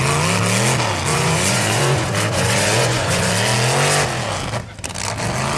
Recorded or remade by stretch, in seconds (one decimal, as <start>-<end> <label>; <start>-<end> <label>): 0.0-1.1 recorded; 1.1-3.3 remade; 3.3-5.6 recorded